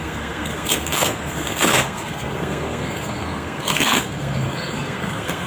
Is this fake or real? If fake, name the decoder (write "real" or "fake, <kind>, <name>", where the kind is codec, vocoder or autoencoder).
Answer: fake, codec, SNAC